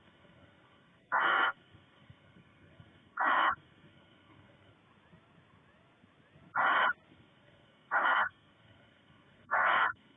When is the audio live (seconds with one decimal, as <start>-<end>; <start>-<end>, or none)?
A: 4.7-7.1